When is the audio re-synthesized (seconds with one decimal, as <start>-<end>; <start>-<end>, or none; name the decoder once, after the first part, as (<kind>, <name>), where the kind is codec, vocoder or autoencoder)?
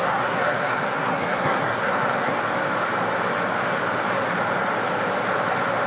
0.0-2.3 (codec, SNAC)